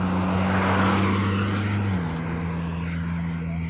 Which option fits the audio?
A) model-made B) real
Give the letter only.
B